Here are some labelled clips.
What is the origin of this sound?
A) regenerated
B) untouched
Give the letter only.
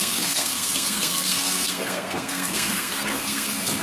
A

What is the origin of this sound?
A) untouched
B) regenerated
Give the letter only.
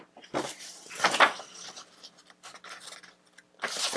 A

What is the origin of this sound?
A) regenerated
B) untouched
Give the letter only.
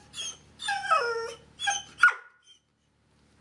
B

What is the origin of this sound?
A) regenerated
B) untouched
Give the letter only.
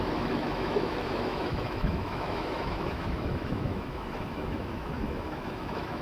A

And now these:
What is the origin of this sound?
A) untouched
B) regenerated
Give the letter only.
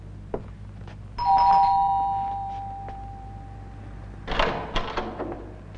A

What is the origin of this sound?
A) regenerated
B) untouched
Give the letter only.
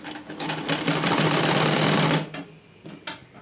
B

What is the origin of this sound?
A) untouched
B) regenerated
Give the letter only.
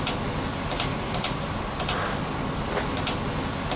A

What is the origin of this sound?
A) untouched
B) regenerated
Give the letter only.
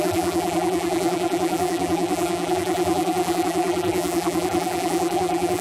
B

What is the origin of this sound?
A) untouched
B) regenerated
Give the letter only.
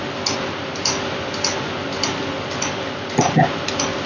A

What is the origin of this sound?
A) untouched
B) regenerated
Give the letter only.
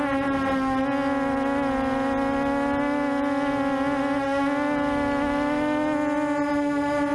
A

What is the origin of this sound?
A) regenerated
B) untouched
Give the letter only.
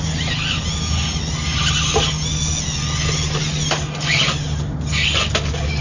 B